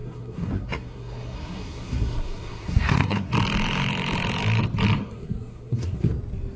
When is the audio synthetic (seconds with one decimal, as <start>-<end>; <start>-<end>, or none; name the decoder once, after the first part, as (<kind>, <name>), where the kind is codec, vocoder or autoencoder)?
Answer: 0.0-3.3 (codec, SNAC); 5.0-6.1